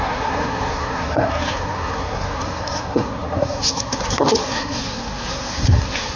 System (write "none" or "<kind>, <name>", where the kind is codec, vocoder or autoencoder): codec, SNAC